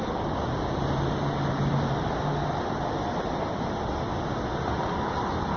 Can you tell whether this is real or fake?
real